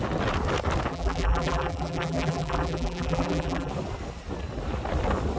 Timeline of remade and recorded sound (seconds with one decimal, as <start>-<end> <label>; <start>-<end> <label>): 0.0-0.9 recorded; 0.9-3.7 remade; 3.7-5.4 recorded

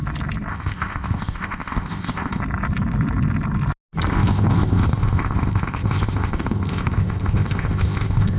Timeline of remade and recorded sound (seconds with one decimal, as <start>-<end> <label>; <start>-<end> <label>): 0.0-0.5 recorded; 0.5-2.4 remade; 2.4-4.1 recorded; 4.1-8.4 remade

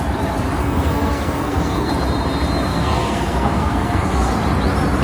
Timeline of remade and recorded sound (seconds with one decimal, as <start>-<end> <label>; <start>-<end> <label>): 0.0-0.6 recorded; 0.6-1.9 remade; 1.9-2.7 recorded; 2.7-4.3 remade; 4.3-5.0 recorded

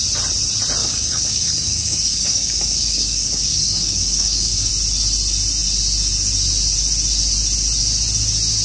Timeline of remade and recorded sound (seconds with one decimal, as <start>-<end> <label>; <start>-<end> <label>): 0.0-0.8 recorded; 0.8-4.7 remade; 4.7-8.6 recorded